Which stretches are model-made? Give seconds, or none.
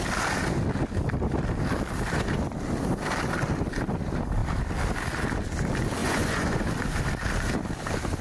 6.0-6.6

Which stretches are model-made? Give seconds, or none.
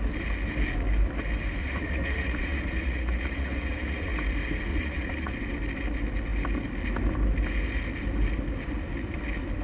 1.6-4.1; 4.7-5.3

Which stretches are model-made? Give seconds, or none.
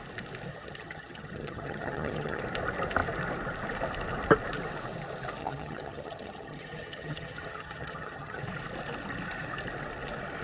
0.5-2.4; 5.4-8.4